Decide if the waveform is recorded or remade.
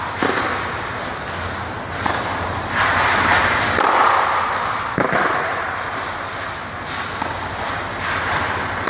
recorded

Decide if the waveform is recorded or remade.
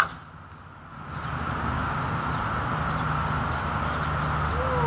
recorded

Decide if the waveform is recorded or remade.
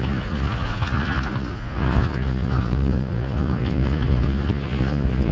remade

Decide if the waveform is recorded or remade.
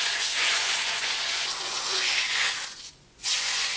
remade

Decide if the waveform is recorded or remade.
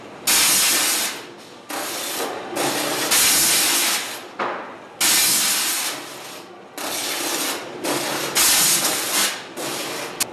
recorded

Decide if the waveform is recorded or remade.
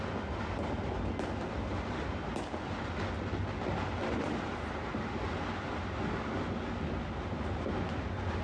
recorded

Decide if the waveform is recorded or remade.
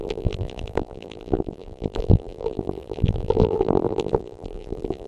remade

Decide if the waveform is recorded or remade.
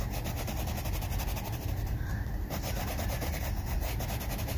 recorded